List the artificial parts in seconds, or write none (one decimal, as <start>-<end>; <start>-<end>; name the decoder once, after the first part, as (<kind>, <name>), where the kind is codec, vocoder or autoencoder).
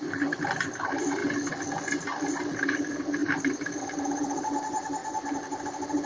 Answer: 0.0-1.2 (vocoder, BigVGAN v2); 2.3-5.0; 5.6-6.1